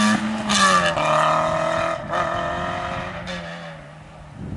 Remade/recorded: recorded